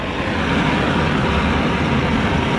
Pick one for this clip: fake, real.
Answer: real